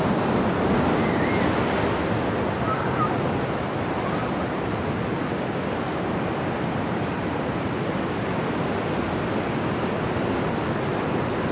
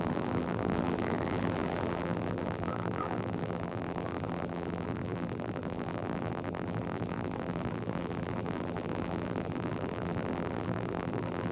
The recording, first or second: first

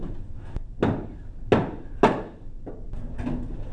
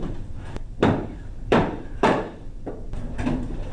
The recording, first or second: first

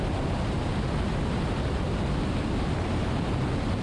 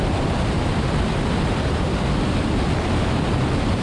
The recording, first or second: first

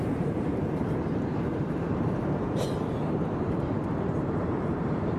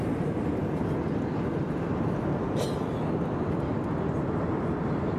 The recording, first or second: second